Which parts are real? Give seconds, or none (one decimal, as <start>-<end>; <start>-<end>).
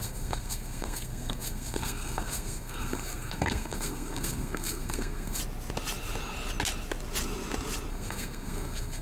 5.4-7.9